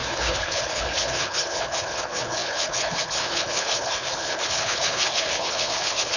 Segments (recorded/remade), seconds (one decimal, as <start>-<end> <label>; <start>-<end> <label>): 0.0-6.2 remade

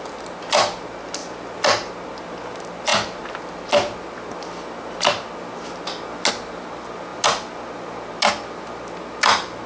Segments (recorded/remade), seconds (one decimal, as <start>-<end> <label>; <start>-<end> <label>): 0.0-9.7 recorded

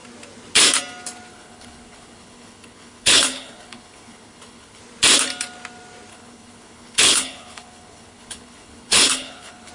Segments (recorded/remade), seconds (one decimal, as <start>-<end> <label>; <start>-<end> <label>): 0.0-1.3 recorded; 1.3-4.8 remade; 4.8-6.1 recorded; 6.1-9.7 remade

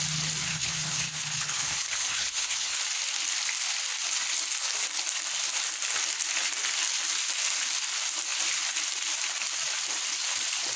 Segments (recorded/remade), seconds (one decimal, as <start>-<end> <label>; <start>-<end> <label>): 0.0-0.5 recorded; 0.5-2.8 remade; 2.8-10.8 recorded

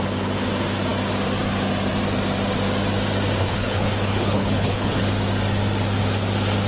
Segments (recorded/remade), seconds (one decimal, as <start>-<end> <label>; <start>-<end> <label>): 0.0-3.4 recorded; 3.4-5.0 remade; 5.0-6.7 recorded